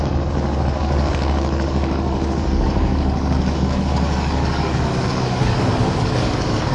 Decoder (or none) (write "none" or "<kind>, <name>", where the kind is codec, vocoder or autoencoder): codec, DAC